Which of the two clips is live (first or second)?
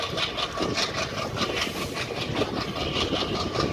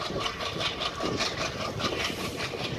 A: first